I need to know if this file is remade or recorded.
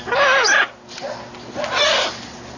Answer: recorded